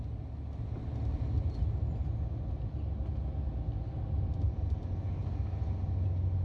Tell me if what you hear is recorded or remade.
recorded